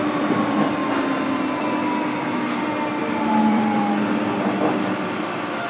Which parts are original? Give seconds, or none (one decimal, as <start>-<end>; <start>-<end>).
0.0-3.0; 3.8-5.7

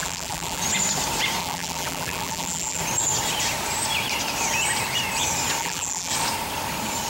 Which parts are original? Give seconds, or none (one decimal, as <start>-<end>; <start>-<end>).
0.6-1.4; 2.8-5.6; 6.1-7.1

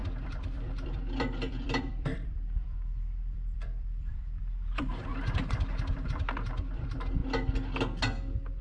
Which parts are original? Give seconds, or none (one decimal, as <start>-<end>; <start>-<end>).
5.1-5.7; 7.2-8.6